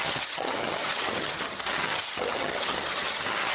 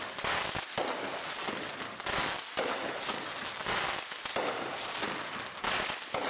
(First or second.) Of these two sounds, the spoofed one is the first